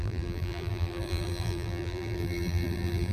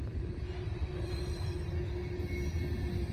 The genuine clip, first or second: second